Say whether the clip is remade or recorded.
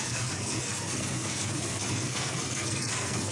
remade